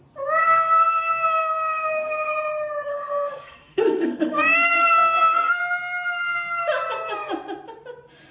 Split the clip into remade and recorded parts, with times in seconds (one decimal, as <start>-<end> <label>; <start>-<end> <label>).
0.0-0.4 recorded; 0.4-2.3 remade; 2.3-2.9 recorded; 2.9-5.6 remade; 5.6-8.3 recorded